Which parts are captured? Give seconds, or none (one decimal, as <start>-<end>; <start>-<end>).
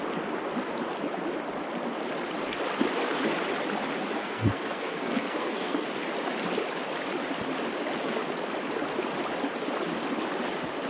0.0-4.0; 5.9-10.9